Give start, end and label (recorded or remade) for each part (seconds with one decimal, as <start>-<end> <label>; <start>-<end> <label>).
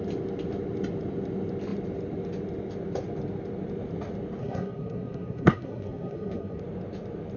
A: 0.0-4.4 recorded; 4.4-6.6 remade; 6.6-7.4 recorded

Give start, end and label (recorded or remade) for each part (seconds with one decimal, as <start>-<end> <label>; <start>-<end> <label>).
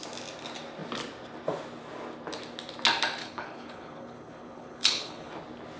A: 0.0-3.2 recorded; 3.2-5.3 remade; 5.3-5.8 recorded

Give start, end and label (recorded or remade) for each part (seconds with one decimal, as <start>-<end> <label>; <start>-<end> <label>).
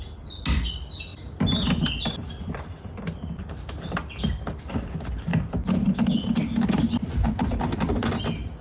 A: 0.0-8.6 recorded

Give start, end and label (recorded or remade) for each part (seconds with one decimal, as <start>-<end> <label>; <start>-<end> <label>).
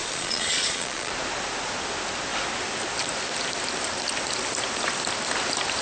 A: 0.0-1.1 remade; 1.1-5.8 recorded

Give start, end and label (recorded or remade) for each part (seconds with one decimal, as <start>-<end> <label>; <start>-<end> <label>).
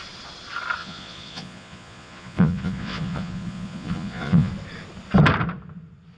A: 0.0-0.8 recorded; 0.8-4.5 remade; 4.5-6.2 recorded